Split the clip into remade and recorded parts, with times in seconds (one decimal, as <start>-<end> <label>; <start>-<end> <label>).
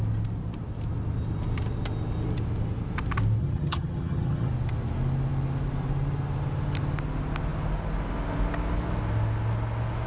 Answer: 0.0-3.4 recorded; 3.4-4.5 remade; 4.5-10.1 recorded